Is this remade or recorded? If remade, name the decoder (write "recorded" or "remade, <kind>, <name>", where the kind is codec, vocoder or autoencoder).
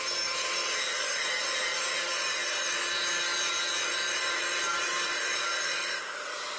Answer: remade, vocoder, BigVGAN v2